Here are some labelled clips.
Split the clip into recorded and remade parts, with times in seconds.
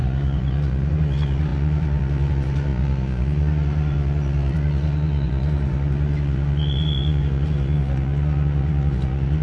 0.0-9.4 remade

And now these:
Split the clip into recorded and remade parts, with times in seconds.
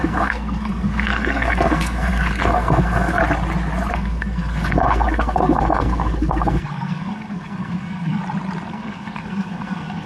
0.0-3.2 remade; 3.2-3.9 recorded; 3.9-8.2 remade; 8.2-8.7 recorded; 8.7-10.1 remade